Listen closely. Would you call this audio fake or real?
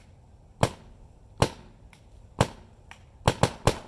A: real